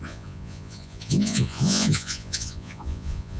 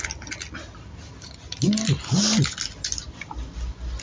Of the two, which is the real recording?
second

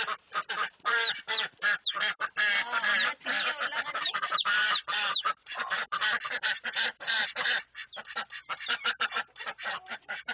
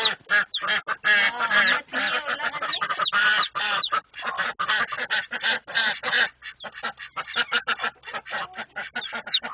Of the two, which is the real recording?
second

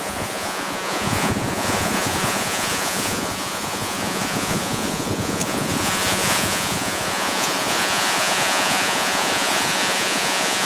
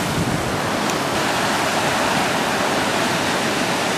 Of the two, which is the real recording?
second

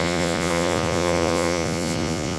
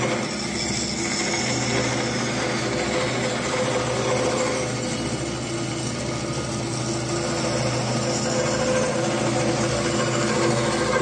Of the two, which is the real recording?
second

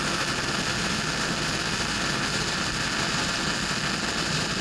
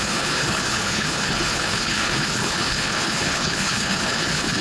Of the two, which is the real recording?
first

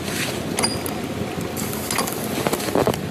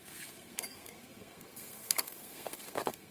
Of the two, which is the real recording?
first